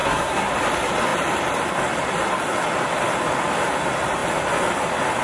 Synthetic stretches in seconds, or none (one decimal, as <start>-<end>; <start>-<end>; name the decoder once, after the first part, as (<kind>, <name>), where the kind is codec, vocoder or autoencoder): 0.0-0.5 (codec, SNAC)